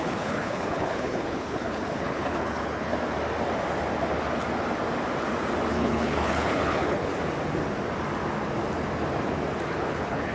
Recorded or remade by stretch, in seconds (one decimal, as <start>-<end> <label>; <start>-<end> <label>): 0.0-2.9 remade; 2.9-5.7 recorded; 5.7-7.1 remade; 7.1-9.7 recorded; 9.7-10.3 remade